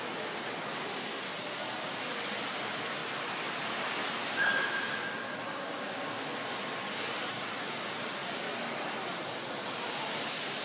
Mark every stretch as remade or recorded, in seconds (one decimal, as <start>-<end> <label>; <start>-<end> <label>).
0.0-5.5 recorded; 5.5-6.1 remade; 6.1-10.6 recorded

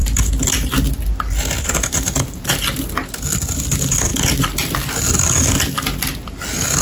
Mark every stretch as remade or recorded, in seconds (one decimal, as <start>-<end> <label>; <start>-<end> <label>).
0.0-6.8 recorded